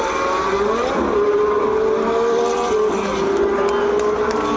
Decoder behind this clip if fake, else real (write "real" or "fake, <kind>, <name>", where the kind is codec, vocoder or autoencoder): real